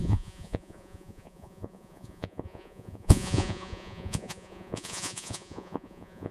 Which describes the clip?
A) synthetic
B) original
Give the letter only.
A